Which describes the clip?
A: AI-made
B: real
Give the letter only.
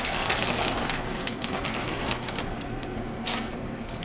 A